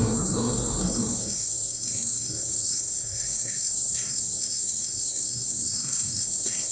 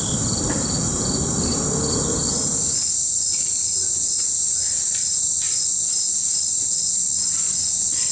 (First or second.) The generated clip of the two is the first